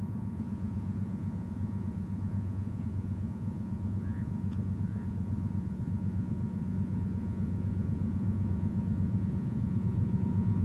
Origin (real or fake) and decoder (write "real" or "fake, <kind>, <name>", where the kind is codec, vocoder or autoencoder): fake, vocoder, Vocos